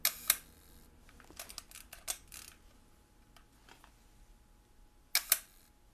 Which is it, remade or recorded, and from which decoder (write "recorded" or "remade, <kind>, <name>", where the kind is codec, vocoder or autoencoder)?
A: recorded